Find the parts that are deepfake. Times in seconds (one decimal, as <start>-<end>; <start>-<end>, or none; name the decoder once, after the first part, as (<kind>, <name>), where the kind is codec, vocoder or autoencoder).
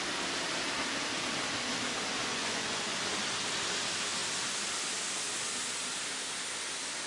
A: 2.2-3.0 (vocoder, Vocos)